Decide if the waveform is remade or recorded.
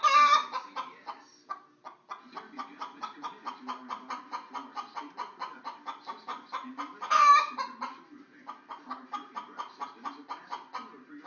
recorded